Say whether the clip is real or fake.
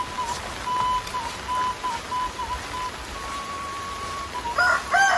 real